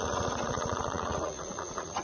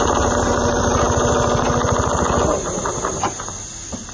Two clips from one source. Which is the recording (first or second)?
second